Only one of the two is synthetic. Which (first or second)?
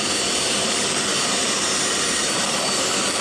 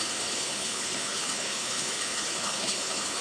second